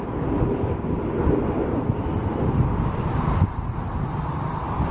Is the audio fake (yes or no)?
no